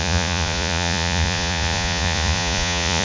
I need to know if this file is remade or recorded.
remade